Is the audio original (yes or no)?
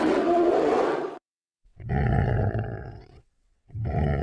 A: no